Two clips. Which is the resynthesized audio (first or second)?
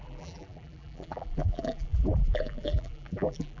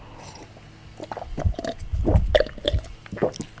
first